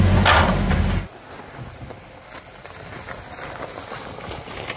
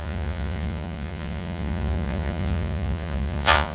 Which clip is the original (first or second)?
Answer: first